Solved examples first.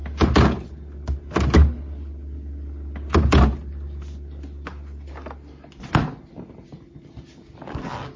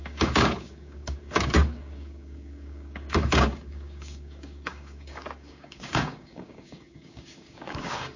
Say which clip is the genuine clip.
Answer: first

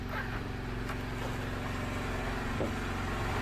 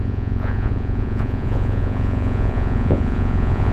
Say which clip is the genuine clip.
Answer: first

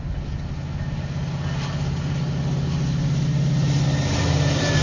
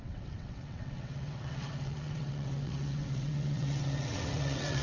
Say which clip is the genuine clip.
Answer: first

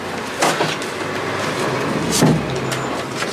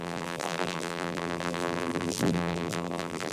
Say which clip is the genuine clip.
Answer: first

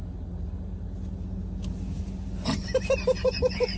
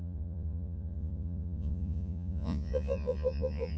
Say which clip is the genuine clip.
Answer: first